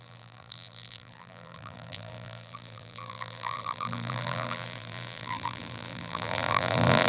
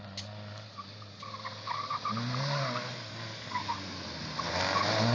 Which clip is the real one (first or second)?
second